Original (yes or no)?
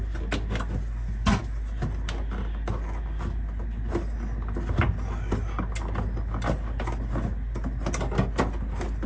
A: yes